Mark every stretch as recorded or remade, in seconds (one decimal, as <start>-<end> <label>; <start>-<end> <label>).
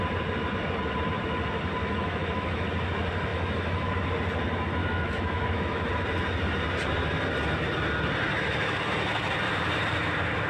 0.0-1.8 recorded; 1.8-2.6 remade; 2.6-3.3 recorded; 3.3-3.9 remade; 3.9-4.8 recorded; 4.8-5.9 remade; 5.9-10.5 recorded